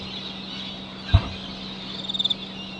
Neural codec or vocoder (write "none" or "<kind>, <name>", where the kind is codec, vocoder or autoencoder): none